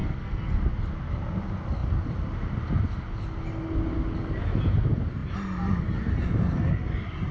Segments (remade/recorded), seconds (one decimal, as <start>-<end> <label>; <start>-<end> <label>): 0.0-0.6 remade; 0.6-7.3 recorded